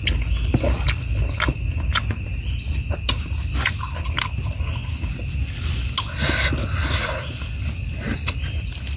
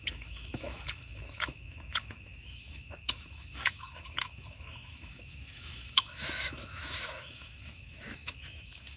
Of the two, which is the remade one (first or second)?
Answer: second